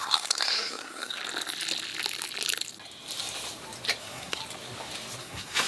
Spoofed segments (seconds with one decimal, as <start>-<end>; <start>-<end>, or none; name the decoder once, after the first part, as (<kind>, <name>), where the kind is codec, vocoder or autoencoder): 0.0-1.2 (codec, SNAC); 4.0-4.4; 5.2-5.7